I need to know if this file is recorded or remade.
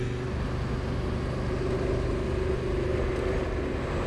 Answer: recorded